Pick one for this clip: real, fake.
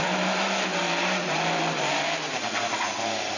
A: real